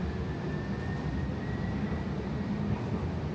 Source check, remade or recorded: recorded